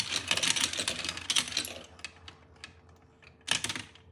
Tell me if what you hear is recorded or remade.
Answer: recorded